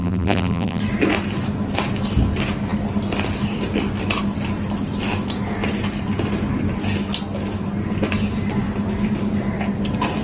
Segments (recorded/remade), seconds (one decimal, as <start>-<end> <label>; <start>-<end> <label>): 0.0-0.8 remade; 0.8-10.2 recorded